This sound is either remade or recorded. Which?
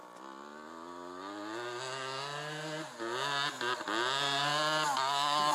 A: recorded